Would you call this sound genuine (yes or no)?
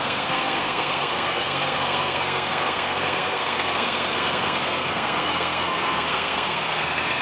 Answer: no